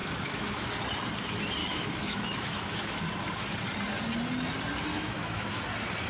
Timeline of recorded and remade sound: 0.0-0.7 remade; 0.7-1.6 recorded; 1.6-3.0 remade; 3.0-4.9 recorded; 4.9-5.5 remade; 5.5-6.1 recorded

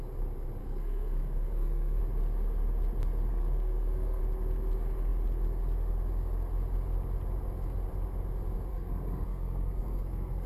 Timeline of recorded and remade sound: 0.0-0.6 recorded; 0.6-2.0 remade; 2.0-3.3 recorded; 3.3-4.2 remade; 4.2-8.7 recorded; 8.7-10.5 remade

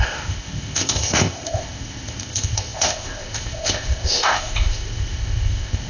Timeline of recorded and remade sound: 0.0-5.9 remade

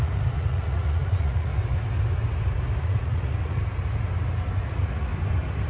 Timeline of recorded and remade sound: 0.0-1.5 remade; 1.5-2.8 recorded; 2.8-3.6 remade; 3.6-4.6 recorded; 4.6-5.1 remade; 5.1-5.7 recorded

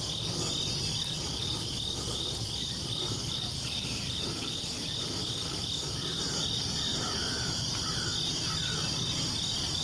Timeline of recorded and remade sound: 0.0-2.6 recorded; 2.6-5.1 remade; 5.1-6.9 recorded; 6.9-7.9 remade; 7.9-9.8 recorded

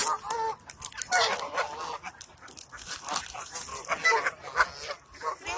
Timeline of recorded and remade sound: 0.0-5.6 recorded

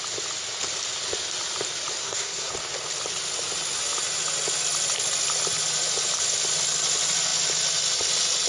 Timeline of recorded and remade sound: 0.0-2.0 recorded; 2.0-2.5 remade; 2.5-8.5 recorded